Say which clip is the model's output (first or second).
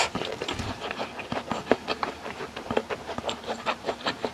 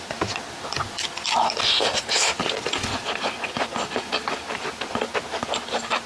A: first